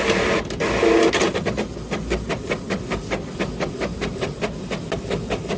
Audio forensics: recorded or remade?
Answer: recorded